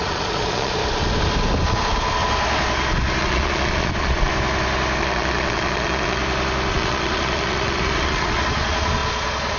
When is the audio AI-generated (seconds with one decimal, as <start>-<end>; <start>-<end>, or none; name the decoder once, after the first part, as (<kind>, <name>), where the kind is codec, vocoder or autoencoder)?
0.0-0.8 (vocoder, Vocos); 3.2-4.3; 5.0-6.2; 6.7-9.6